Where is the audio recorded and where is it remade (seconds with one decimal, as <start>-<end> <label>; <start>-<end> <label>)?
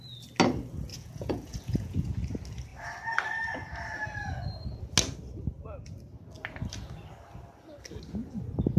0.0-0.9 recorded; 0.9-2.2 remade; 2.2-8.8 recorded